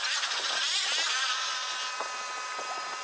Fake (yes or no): no